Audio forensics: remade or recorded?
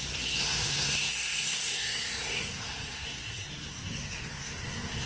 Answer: remade